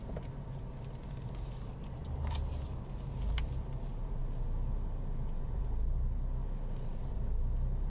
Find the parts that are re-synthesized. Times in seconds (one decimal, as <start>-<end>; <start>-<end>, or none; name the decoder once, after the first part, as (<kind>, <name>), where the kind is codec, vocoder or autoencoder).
none